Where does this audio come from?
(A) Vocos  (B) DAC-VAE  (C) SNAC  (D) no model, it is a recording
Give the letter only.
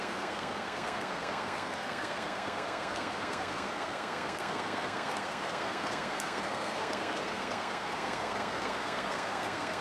C